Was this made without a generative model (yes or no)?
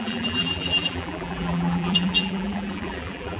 no